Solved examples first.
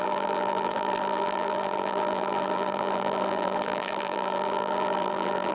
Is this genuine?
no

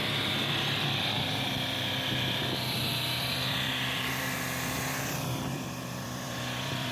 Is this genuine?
no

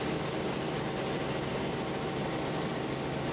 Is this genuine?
yes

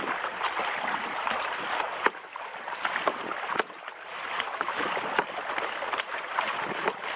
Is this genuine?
no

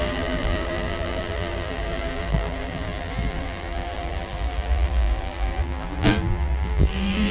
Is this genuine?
no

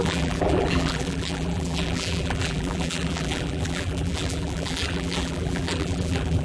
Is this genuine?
no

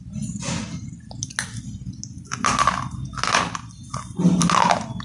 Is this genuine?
yes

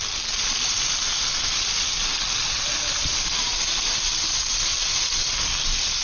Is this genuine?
yes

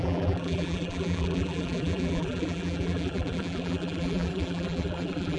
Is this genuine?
no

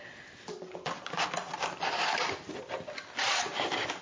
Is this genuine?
yes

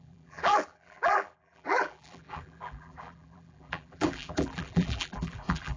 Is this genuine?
no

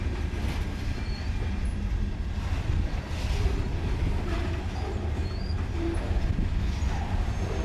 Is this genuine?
yes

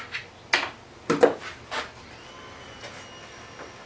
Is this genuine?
yes